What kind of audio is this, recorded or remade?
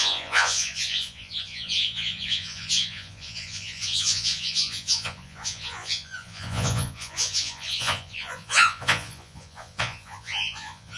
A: remade